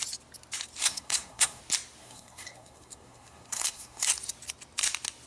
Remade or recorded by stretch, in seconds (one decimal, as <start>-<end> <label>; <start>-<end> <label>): 0.0-0.8 recorded; 0.8-1.6 remade; 1.6-2.0 recorded; 2.0-4.1 remade; 4.1-5.3 recorded